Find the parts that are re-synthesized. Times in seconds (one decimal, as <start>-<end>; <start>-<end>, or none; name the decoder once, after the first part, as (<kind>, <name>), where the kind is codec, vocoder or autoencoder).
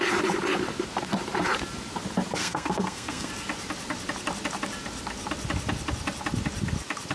2.4-3.3 (codec, SNAC)